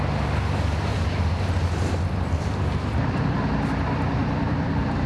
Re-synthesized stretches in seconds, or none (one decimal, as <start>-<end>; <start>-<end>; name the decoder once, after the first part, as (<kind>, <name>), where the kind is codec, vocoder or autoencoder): 0.9-3.7 (vocoder, BigVGAN v2); 4.2-5.1